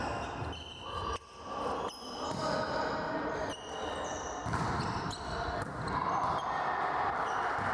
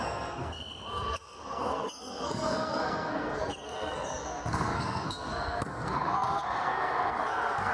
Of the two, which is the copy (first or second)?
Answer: second